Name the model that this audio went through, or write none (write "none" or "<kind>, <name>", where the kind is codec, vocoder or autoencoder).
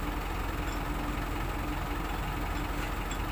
none